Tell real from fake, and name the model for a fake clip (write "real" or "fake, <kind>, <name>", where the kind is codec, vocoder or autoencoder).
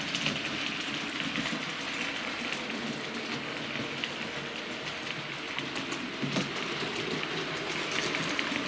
real